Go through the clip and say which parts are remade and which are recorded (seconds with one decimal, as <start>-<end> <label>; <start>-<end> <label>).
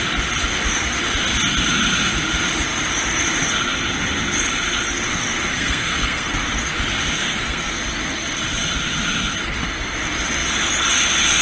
0.0-5.5 recorded; 5.5-6.3 remade; 6.3-7.2 recorded; 7.2-7.8 remade; 7.8-11.4 recorded